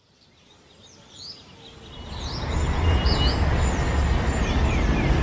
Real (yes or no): yes